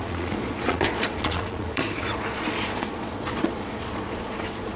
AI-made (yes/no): yes